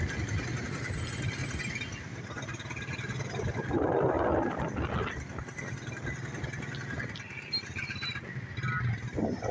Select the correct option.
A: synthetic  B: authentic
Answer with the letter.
B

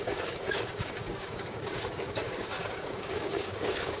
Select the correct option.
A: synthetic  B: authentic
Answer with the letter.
A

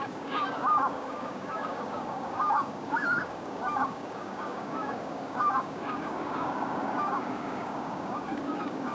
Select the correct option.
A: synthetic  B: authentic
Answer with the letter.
A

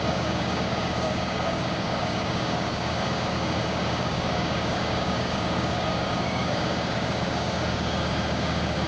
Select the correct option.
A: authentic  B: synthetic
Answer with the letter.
B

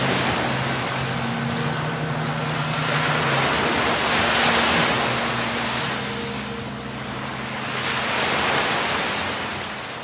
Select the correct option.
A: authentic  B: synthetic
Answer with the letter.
A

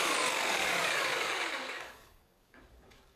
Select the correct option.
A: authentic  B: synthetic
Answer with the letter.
B